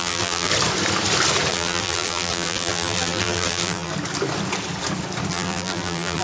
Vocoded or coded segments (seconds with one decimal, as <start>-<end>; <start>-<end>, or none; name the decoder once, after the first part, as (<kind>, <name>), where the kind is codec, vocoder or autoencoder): 0.0-0.5 (vocoder, BigVGAN v2); 1.5-3.9; 5.3-6.2